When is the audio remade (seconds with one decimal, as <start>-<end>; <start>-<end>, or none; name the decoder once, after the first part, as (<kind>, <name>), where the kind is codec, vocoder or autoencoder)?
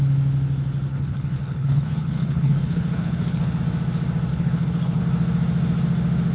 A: 0.9-3.6 (codec, HILCodec); 4.3-5.0